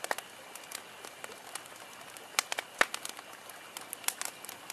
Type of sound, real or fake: real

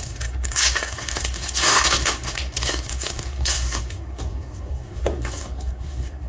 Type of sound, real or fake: fake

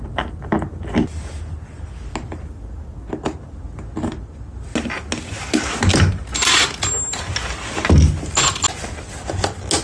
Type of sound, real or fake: real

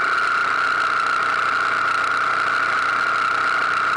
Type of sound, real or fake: real